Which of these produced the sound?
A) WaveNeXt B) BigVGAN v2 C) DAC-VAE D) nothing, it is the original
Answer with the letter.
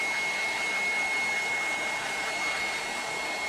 D